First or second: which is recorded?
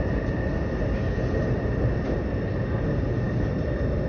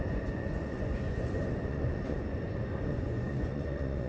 first